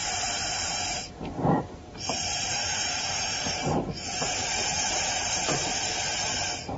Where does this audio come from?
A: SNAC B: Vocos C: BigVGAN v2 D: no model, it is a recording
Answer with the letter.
C